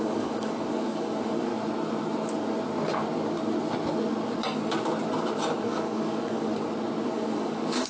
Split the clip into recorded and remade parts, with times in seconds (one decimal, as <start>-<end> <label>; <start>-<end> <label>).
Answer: 0.0-1.5 remade; 1.5-5.6 recorded; 5.6-6.5 remade; 6.5-7.1 recorded; 7.1-7.9 remade